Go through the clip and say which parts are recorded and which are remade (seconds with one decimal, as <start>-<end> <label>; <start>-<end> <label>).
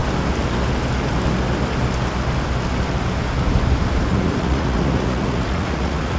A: 0.0-4.1 recorded; 4.1-6.2 remade